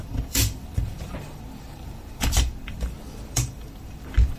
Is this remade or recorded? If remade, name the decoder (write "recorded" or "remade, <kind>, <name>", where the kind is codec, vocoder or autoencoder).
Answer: remade, vocoder, BigVGAN v2